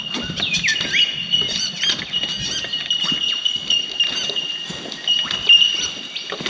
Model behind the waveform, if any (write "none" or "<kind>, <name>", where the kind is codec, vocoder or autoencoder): none